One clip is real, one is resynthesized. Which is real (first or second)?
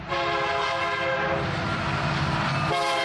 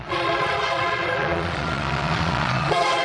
first